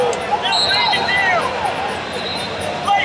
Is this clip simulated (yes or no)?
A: no